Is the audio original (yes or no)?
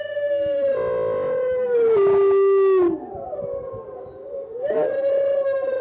yes